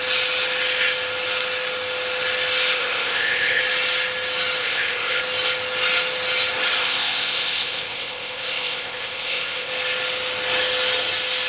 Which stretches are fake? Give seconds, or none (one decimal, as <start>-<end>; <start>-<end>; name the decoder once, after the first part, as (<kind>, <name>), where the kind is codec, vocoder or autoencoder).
2.8-3.6 (codec, ZipCodec); 4.6-5.2; 6.8-9.7